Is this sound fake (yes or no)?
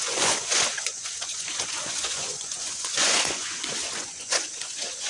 yes